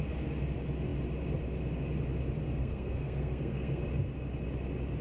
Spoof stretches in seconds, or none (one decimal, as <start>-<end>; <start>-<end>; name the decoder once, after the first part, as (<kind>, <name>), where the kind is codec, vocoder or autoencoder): 2.6-3.8 (codec, SNAC)

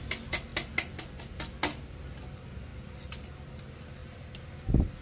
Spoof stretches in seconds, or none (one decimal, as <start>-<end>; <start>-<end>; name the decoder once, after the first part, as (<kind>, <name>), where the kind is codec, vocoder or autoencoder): none

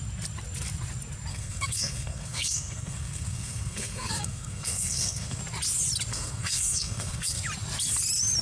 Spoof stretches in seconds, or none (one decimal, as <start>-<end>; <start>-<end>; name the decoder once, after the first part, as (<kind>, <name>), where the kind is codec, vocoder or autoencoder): 1.3-5.4 (codec, SNAC); 6.1-7.4

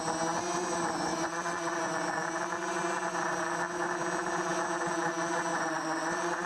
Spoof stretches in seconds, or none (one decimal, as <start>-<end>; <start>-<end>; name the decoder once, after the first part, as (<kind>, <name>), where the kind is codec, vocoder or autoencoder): 1.1-1.8 (vocoder, Vocos); 5.5-6.5